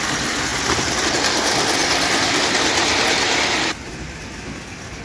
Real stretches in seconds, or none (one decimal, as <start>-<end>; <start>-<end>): 0.0-5.0

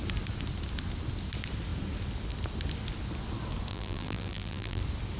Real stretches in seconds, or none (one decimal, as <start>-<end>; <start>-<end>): 0.0-3.7; 4.8-5.2

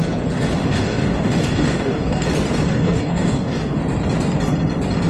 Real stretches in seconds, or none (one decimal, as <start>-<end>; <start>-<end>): 0.0-0.6; 2.2-2.7; 3.8-5.1

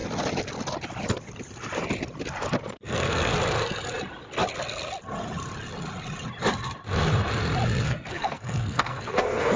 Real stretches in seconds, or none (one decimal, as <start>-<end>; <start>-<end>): 0.0-2.7; 3.3-7.8

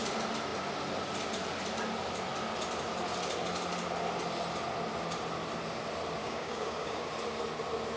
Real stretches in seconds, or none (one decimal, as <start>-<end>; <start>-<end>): 0.0-6.2; 7.1-8.0

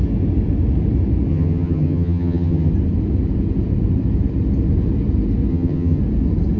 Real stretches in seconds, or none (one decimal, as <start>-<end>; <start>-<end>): 0.0-1.3; 2.7-5.5; 6.0-6.6

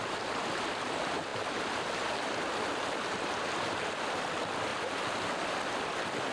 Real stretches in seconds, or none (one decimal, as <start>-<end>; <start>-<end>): 0.0-6.3

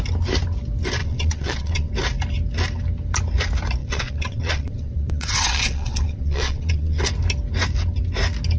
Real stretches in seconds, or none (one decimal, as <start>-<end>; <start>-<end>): 0.0-1.0; 1.9-3.8; 7.1-8.6